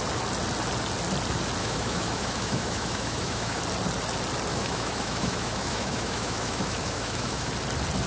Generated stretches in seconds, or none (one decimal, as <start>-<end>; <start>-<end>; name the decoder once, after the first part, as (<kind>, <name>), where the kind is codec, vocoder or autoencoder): 1.6-3.6 (autoencoder, DAC-VAE); 4.5-7.5